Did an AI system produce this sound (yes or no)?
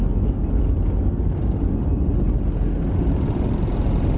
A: no